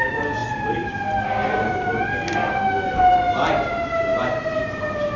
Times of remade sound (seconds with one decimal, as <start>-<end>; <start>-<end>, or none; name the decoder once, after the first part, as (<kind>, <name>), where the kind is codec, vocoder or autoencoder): none